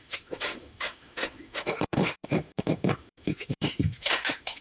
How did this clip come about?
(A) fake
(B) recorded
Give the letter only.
A